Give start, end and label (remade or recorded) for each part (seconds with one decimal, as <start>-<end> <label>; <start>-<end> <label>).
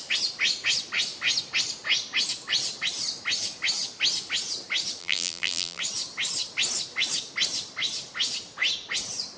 0.0-5.0 recorded; 5.0-5.8 remade; 5.8-9.4 recorded